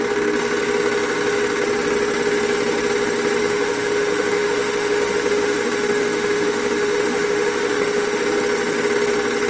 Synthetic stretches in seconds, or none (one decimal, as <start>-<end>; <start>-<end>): 3.4-8.2